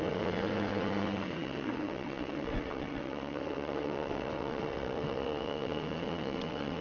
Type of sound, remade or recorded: remade